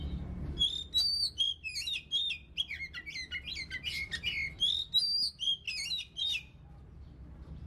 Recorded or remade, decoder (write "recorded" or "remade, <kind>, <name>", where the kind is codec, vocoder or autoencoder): recorded